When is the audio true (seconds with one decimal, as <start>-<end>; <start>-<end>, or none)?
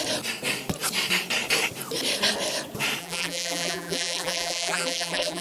0.0-3.0